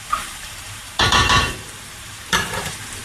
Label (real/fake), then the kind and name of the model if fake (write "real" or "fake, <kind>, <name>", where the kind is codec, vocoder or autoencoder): fake, vocoder, BigVGAN v2